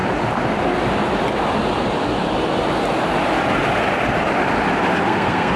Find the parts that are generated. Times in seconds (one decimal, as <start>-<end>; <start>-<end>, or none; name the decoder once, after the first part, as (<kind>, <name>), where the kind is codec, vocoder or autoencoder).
5.0-5.6 (codec, SNAC)